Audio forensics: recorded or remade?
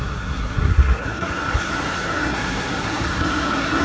remade